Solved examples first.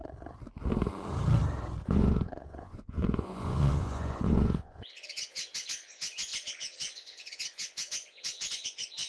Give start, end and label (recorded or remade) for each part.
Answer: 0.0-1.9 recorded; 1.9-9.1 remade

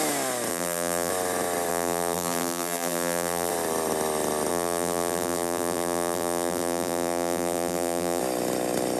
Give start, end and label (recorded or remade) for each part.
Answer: 0.0-0.5 recorded; 0.5-1.1 remade; 1.1-1.7 recorded; 1.7-3.5 remade; 3.5-4.5 recorded; 4.5-8.2 remade; 8.2-9.0 recorded